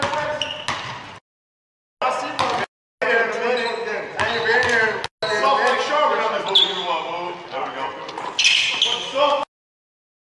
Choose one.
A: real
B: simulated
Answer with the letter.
A